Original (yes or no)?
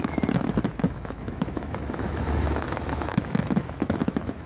no